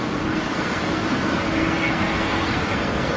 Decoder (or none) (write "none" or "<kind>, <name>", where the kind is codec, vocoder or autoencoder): codec, SNAC